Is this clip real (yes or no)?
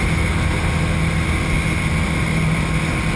yes